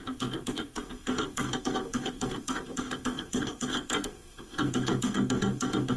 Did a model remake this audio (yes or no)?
yes